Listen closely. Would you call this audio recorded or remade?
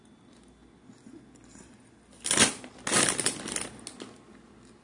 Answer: recorded